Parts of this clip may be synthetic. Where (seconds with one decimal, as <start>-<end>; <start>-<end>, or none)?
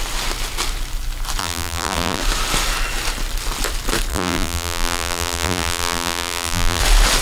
1.4-2.2; 4.1-6.8